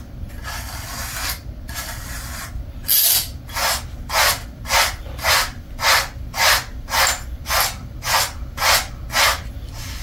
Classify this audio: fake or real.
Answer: real